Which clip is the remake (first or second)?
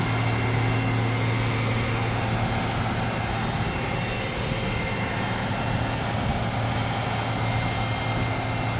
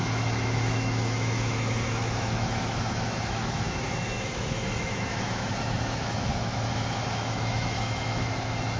second